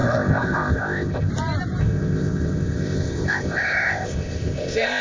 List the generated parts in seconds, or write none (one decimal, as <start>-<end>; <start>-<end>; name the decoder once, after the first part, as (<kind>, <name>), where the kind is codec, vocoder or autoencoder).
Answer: 0.0-1.3 (codec, ZipCodec); 1.8-5.0